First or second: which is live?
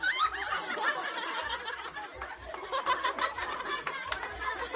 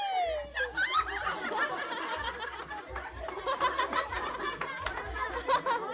second